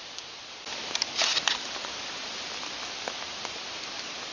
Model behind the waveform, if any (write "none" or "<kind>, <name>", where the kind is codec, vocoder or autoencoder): none